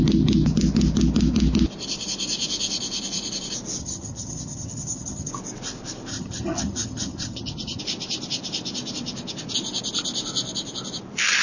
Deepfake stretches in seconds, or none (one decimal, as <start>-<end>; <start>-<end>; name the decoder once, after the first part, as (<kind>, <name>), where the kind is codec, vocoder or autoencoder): 3.8-5.3 (vocoder, HiFi-GAN); 6.1-7.8